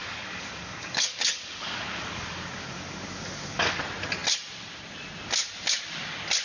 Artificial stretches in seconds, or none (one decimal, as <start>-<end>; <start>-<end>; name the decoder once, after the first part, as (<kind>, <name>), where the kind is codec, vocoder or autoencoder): 0.0-3.8 (codec, DAC)